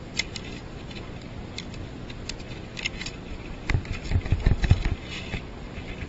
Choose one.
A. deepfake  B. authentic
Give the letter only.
B